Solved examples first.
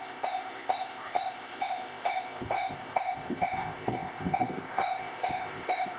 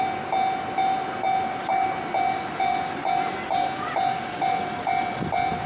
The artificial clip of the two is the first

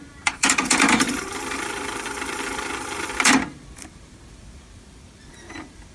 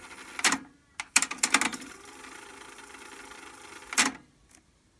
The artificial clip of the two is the first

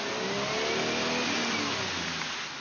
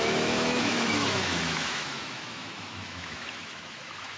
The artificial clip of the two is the second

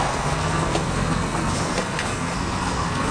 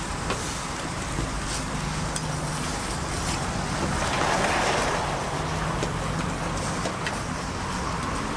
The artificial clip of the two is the first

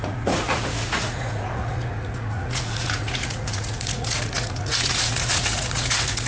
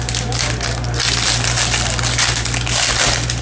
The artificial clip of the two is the first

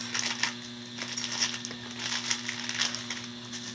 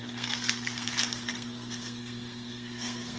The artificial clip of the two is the second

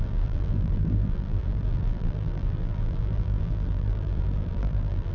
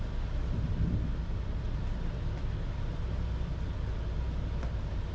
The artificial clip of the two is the first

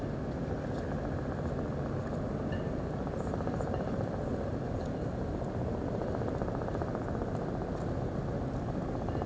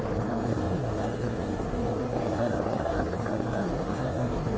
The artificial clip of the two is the second